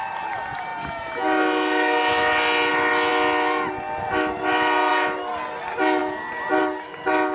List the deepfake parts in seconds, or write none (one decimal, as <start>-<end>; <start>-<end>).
none